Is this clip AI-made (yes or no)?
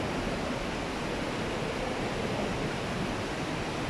yes